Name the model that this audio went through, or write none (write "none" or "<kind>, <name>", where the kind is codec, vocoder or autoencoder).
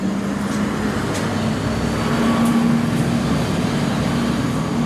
none